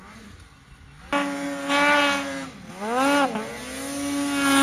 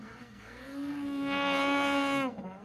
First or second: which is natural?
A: first